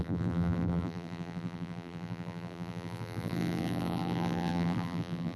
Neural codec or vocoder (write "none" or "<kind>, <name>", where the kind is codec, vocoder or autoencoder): vocoder, BigVGAN v2